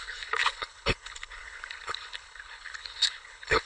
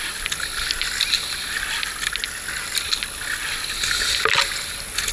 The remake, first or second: first